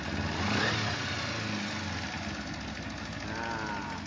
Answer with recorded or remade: recorded